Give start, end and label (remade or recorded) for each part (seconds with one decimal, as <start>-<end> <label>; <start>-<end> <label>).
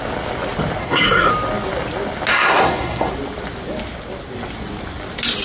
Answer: 0.0-0.8 recorded; 0.8-1.3 remade; 1.3-2.3 recorded; 2.3-3.1 remade; 3.1-5.4 recorded